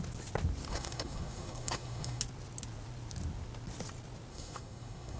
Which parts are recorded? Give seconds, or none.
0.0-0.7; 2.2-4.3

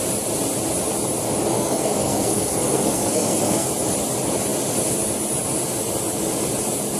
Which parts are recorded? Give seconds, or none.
0.0-1.5; 3.7-7.0

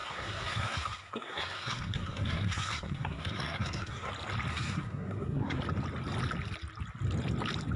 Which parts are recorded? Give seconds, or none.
4.1-4.5; 5.6-7.8

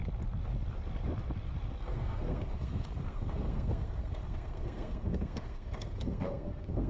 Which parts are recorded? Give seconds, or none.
0.0-1.8

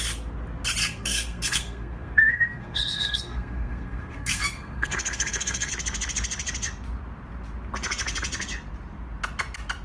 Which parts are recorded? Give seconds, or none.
0.0-0.8; 5.7-9.8

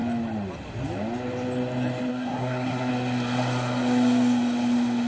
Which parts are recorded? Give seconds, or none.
0.0-2.1; 2.9-5.1

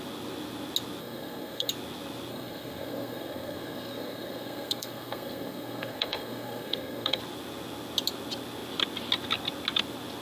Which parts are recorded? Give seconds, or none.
0.0-1.0; 1.7-2.3; 7.2-10.2